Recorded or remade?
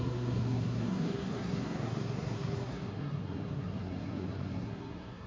remade